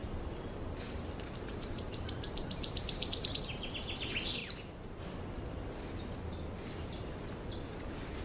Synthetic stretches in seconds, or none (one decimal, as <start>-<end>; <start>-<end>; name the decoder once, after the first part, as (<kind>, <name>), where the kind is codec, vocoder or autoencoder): 0.0-3.7 (vocoder, BigVGAN v2); 4.4-5.0